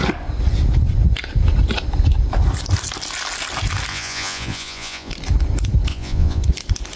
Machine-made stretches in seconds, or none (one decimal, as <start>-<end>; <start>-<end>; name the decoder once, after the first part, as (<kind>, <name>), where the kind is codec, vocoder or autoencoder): 3.9-5.1 (vocoder, Vocos); 5.9-6.4